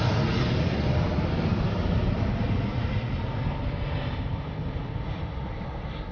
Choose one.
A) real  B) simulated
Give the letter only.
A